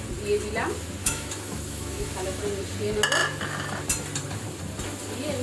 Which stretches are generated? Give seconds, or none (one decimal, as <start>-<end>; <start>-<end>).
1.0-2.4